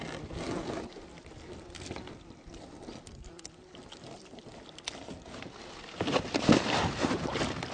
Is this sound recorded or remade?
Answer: recorded